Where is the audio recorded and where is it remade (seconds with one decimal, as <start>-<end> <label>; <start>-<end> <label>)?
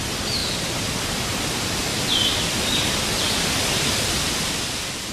0.0-0.4 recorded; 0.4-0.9 remade; 0.9-1.9 recorded; 1.9-5.1 remade